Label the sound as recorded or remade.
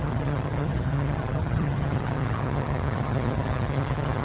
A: remade